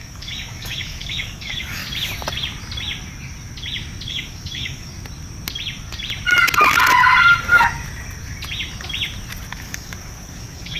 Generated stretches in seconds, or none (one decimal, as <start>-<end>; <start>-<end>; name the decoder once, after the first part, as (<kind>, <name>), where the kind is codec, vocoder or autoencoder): 0.0-1.8 (codec, DAC); 4.1-4.9; 9.6-10.8